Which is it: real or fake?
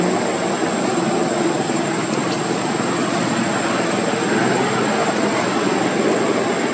real